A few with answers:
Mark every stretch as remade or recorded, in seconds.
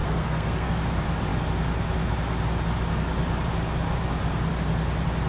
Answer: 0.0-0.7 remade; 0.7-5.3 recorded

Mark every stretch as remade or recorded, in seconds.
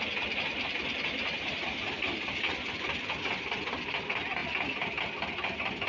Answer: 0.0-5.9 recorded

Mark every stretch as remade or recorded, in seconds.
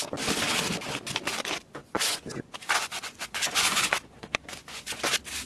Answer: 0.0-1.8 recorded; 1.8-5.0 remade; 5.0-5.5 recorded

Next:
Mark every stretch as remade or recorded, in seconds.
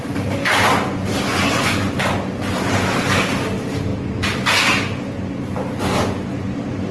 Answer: 0.0-1.3 recorded; 1.3-1.9 remade; 1.9-6.9 recorded